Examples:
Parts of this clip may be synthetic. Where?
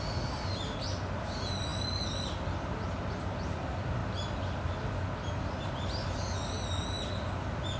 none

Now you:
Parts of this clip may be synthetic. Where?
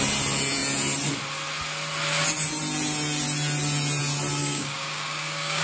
4.4-5.6 (codec, DAC)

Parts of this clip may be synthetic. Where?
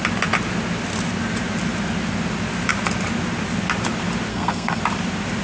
4.3-4.8 (codec, SNAC)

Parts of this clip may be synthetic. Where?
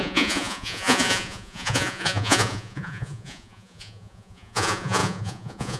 0.0-5.8 (vocoder, Vocos)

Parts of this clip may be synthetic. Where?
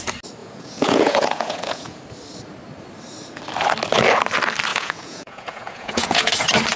0.4-2.0 (vocoder, Vocos); 4.7-6.3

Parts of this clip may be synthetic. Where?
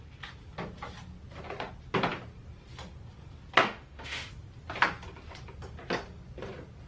3.6-4.3 (autoencoder, DAC-VAE)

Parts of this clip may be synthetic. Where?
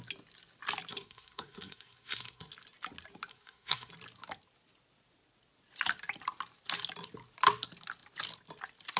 0.9-2.5 (codec, SNAC); 3.3-3.9